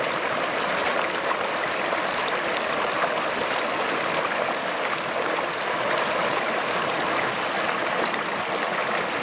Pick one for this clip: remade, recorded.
remade